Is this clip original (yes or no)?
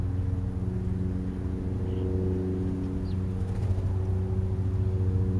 yes